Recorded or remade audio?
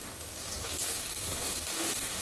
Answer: remade